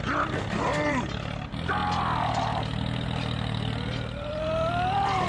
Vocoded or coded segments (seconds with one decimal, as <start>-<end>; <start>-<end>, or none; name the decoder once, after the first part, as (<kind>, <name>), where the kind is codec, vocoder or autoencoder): none